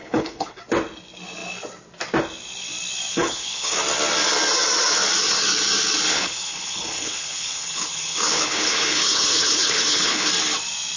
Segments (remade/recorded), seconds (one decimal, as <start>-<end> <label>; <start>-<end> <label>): 0.0-0.6 remade; 0.6-3.1 recorded; 3.1-3.8 remade; 3.8-6.1 recorded; 6.1-10.3 remade; 10.3-11.0 recorded